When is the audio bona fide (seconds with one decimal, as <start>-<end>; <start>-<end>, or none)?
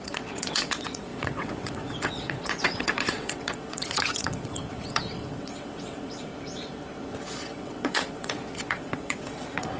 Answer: 6.3-7.2